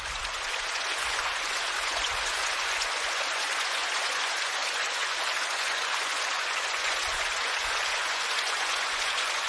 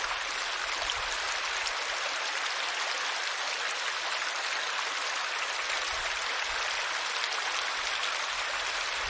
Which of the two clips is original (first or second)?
second